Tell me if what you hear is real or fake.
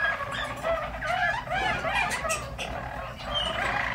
real